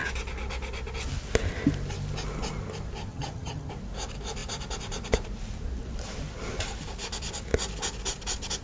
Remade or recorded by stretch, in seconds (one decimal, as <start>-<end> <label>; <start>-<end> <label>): 0.0-3.1 recorded; 3.1-3.7 remade; 3.7-8.6 recorded